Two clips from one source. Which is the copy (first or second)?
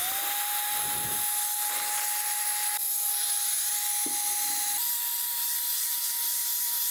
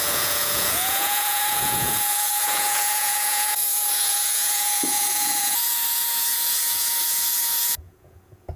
second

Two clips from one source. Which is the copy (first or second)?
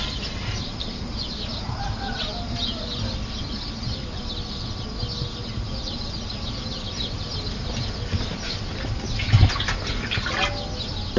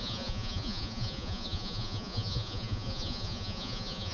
second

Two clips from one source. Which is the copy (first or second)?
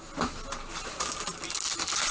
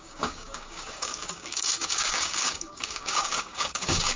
second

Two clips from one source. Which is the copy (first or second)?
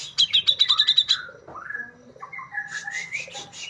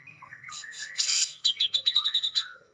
second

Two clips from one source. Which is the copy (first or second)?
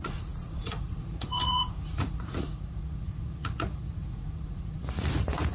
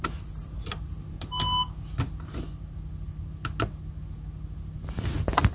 first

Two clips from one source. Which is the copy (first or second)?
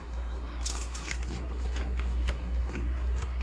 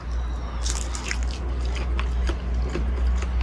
first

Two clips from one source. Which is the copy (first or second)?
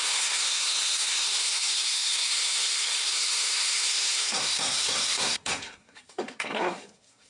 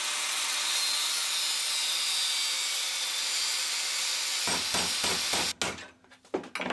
first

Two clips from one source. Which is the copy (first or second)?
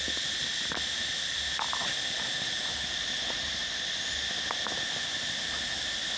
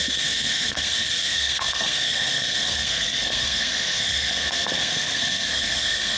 second